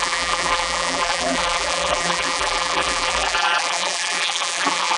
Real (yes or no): no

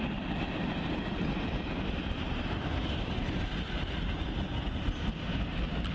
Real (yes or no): yes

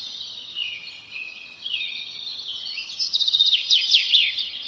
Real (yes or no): no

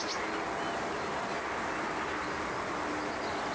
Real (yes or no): yes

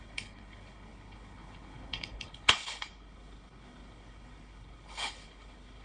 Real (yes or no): no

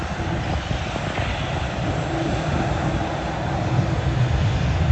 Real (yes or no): yes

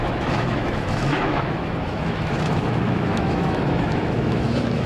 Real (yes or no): no